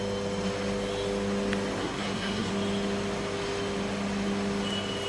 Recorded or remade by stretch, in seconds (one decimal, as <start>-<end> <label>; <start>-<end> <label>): 0.0-1.8 recorded; 1.8-2.5 remade; 2.5-5.1 recorded